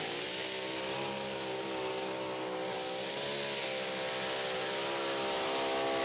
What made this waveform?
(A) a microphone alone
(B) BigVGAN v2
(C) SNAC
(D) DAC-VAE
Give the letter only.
A